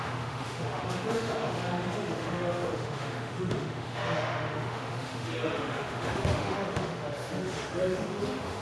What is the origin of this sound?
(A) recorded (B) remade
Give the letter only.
B